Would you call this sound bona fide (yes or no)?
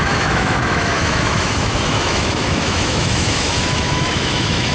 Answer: no